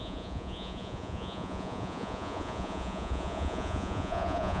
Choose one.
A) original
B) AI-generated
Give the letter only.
B